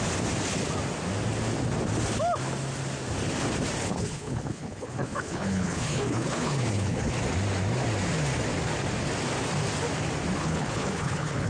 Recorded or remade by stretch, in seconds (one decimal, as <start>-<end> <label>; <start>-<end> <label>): 0.0-3.8 recorded; 3.8-7.1 remade; 7.1-10.4 recorded; 10.4-11.5 remade